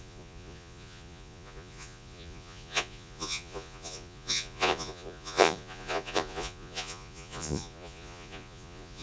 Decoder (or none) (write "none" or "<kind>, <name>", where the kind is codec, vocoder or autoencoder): vocoder, Vocos